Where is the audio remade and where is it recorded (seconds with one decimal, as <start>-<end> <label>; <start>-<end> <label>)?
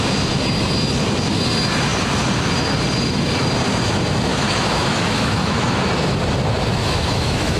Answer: 0.0-4.3 recorded; 4.3-5.8 remade; 5.8-6.8 recorded; 6.8-7.6 remade